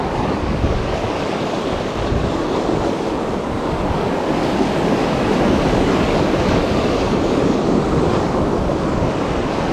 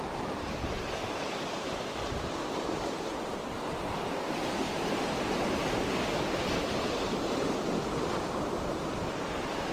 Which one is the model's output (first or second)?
first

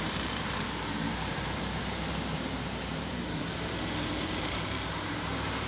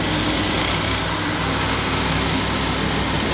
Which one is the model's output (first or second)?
first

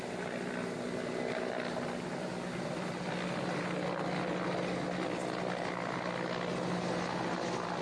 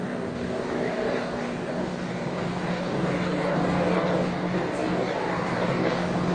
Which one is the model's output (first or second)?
second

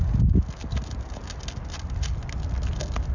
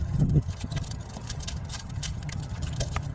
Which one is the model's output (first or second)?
second